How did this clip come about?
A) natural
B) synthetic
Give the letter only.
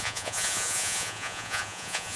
B